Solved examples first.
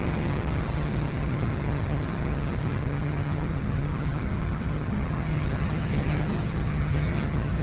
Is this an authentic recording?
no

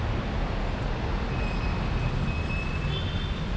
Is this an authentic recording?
yes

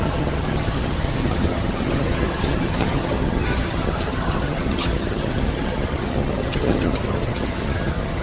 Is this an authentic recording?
no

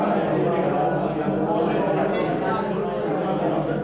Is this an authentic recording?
yes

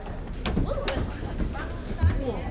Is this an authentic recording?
yes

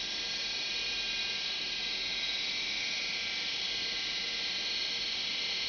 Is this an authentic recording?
yes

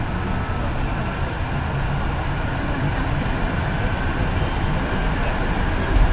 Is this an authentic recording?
yes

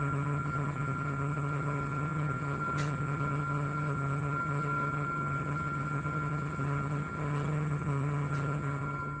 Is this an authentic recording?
no